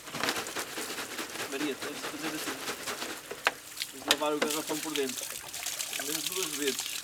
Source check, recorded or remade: recorded